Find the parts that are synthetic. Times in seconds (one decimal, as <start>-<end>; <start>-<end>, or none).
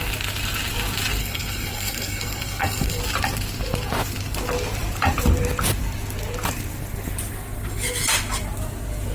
1.2-3.0